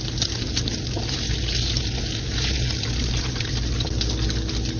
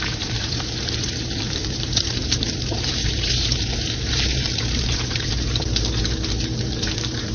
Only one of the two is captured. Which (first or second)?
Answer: first